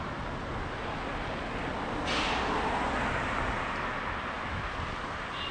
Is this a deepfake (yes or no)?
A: no